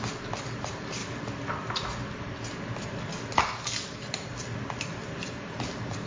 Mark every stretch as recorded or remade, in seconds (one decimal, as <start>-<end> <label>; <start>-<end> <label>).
0.0-6.1 recorded